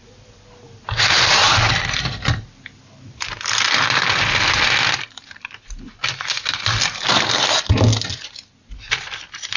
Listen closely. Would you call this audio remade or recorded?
recorded